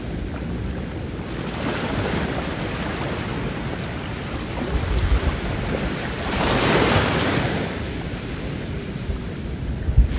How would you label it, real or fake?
real